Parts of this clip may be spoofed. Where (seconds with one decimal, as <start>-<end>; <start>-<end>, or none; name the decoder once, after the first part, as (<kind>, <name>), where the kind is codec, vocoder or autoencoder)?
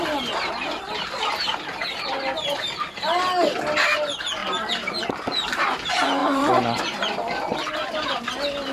6.2-6.8 (vocoder, BigVGAN v2)